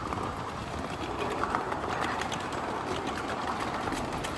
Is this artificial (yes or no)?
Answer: no